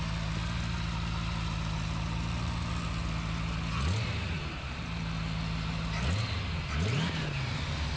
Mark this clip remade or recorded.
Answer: recorded